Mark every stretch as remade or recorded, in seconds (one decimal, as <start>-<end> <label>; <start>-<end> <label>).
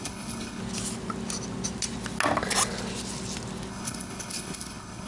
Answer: 0.0-0.6 remade; 0.6-3.7 recorded; 3.7-5.1 remade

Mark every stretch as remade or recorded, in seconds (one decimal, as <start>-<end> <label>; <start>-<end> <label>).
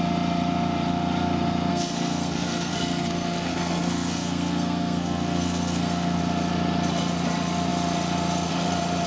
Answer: 0.0-1.7 recorded; 1.7-6.2 remade; 6.2-9.1 recorded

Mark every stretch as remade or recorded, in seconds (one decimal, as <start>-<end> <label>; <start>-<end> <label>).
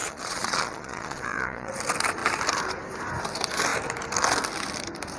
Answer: 0.0-1.7 remade; 1.7-5.2 recorded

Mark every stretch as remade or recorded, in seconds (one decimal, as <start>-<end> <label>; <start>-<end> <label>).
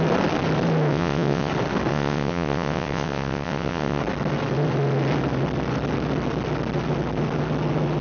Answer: 0.0-0.9 recorded; 0.9-1.5 remade; 1.5-1.9 recorded; 1.9-4.0 remade; 4.0-8.0 recorded